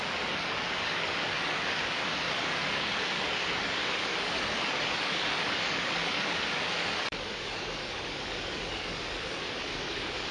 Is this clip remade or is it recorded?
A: remade